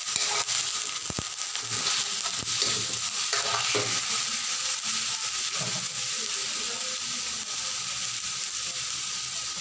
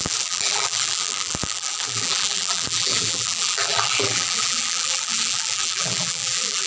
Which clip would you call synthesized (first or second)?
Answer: second